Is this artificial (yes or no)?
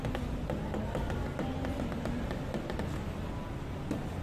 no